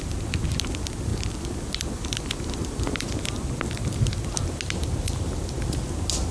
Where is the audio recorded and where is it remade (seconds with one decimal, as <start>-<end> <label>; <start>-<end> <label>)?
0.0-6.3 recorded